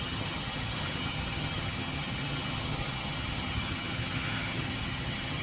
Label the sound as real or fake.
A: fake